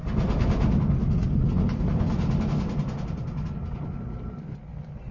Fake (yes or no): no